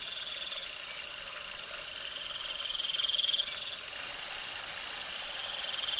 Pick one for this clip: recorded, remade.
recorded